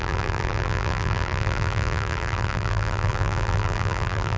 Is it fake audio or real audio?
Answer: fake